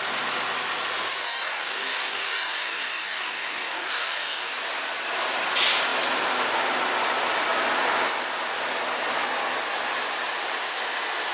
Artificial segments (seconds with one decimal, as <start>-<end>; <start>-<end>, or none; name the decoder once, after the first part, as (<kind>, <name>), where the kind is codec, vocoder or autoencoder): 1.2-4.5 (codec, DAC)